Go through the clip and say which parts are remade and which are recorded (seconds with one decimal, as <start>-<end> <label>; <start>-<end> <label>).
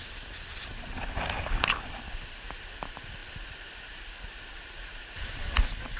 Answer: 0.0-6.0 recorded